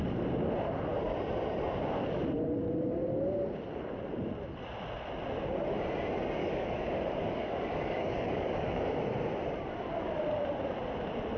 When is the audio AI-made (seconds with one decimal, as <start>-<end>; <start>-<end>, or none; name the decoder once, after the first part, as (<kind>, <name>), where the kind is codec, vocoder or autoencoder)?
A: 6.4-9.0 (codec, DAC)